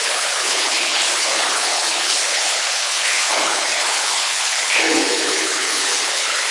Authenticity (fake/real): fake